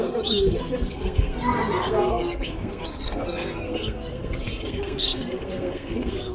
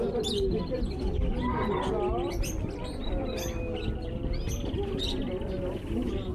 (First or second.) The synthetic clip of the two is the first